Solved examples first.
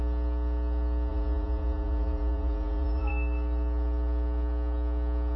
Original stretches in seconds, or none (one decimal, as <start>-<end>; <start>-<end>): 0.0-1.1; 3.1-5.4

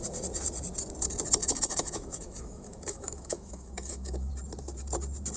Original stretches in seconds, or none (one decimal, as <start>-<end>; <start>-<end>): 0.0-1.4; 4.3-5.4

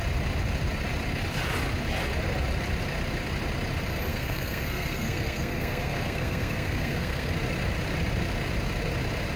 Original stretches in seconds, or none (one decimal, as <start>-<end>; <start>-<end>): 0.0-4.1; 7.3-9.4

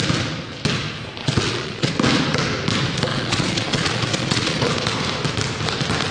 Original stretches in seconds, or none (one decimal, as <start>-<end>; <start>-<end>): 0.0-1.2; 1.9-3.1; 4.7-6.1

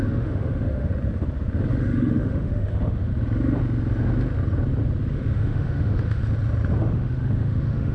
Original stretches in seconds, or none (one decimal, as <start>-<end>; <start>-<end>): 0.9-1.7; 3.1-5.1; 6.2-6.8

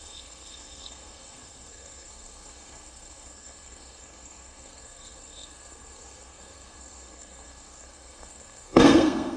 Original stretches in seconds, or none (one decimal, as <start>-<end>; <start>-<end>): none

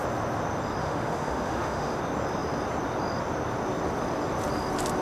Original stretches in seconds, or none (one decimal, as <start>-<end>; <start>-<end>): 0.0-0.8; 2.0-5.0